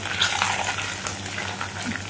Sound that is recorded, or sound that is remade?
recorded